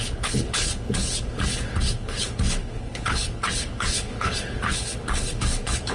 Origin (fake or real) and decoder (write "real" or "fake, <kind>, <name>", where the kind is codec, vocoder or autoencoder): fake, codec, HILCodec